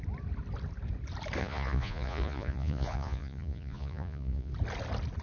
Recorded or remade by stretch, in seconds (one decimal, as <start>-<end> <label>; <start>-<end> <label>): 0.0-1.4 recorded; 1.4-4.5 remade; 4.5-5.2 recorded